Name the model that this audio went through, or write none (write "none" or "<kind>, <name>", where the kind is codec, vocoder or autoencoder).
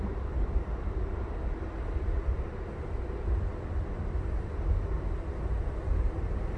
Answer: vocoder, BigVGAN v2